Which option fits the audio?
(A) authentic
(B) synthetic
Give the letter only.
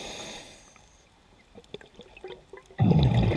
A